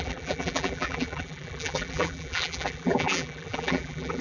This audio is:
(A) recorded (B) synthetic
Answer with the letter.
B